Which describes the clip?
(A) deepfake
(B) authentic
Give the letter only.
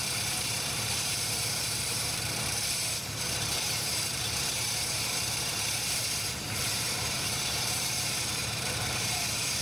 A